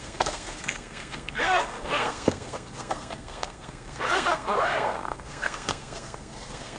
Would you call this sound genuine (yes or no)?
no